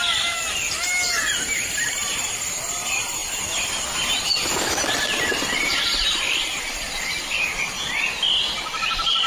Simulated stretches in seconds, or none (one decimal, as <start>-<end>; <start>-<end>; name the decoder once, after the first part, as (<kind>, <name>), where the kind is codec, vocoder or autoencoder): none